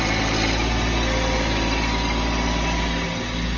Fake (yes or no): no